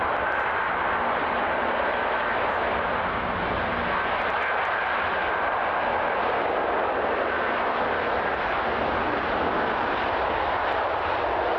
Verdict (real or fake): real